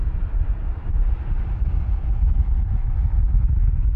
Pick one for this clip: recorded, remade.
recorded